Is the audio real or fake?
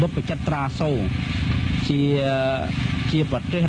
real